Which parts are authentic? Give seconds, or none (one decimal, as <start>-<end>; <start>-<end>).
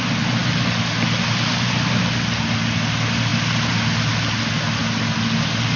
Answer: 0.0-5.8